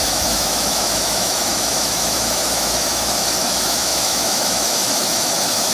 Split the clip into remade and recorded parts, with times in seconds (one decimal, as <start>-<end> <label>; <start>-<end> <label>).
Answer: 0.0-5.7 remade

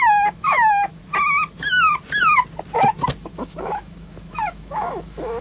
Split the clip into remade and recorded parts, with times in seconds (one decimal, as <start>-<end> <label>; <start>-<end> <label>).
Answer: 0.0-1.0 remade; 1.0-3.3 recorded; 3.3-5.4 remade

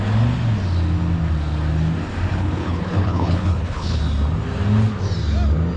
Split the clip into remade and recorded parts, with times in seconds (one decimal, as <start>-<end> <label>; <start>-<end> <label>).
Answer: 0.0-2.3 recorded; 2.3-4.0 remade; 4.0-5.8 recorded

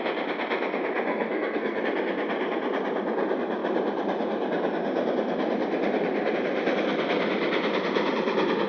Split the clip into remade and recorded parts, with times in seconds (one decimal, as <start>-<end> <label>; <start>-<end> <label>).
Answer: 0.0-1.1 recorded; 1.1-1.8 remade; 1.8-8.7 recorded